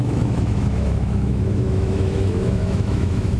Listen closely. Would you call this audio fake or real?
fake